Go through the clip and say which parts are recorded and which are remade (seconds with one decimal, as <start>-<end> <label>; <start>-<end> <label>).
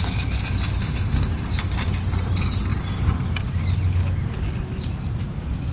0.0-0.8 recorded; 0.8-1.3 remade; 1.3-5.7 recorded